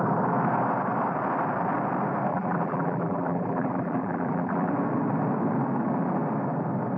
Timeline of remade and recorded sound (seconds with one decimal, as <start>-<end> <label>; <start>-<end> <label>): 0.0-2.3 recorded; 2.3-4.7 remade; 4.7-7.0 recorded